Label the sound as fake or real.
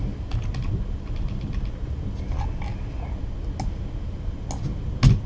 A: real